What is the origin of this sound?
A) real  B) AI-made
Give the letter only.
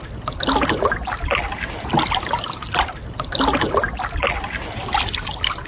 A